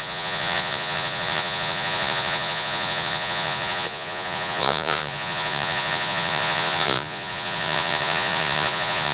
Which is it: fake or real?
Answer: fake